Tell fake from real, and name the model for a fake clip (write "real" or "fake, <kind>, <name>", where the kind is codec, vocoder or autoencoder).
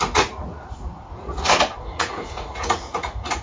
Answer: fake, vocoder, Vocos